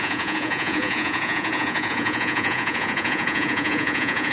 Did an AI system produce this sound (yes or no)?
yes